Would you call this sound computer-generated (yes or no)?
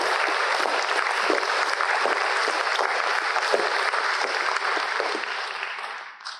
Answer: no